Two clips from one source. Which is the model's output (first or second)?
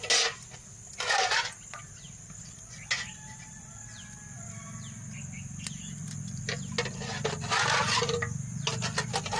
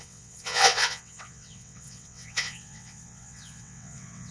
second